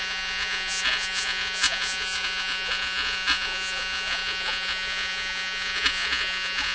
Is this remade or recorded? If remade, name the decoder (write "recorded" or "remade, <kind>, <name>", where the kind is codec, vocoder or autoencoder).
remade, vocoder, Vocos